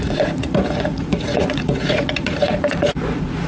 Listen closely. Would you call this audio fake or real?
fake